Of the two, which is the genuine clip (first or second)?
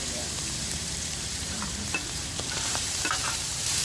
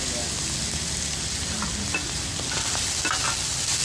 second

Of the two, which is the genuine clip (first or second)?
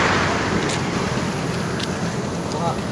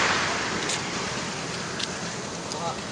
first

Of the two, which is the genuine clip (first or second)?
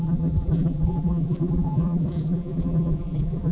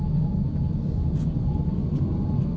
second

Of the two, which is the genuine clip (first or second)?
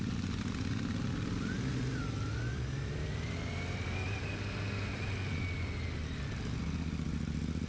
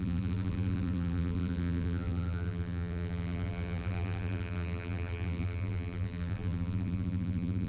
first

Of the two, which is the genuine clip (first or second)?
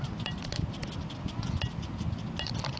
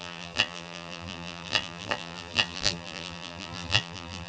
first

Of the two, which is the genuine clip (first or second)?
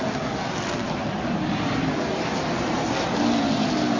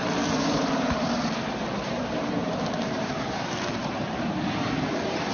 first